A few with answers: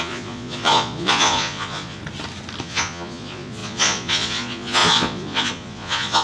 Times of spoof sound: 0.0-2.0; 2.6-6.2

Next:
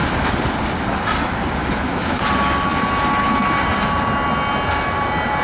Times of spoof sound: 1.6-2.2

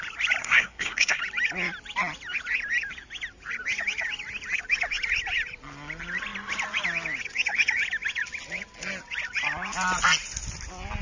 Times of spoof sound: 0.4-1.2

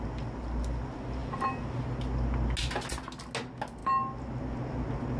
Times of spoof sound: none

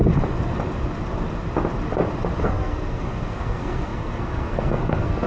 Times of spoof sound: 2.4-5.3

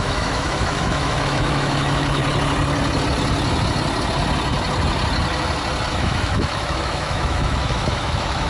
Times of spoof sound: 0.0-2.2; 5.9-8.5